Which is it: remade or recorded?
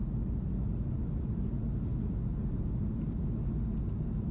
recorded